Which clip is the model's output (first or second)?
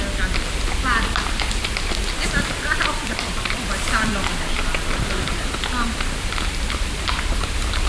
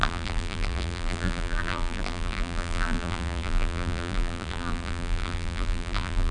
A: second